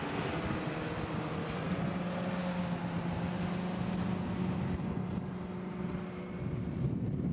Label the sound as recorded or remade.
recorded